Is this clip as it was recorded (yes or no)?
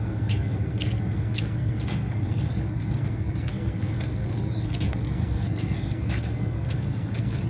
no